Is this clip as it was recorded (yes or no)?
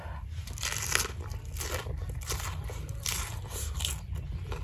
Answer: yes